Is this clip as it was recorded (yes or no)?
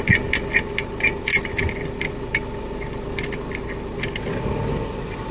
yes